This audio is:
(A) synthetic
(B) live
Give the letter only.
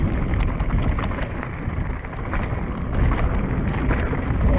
B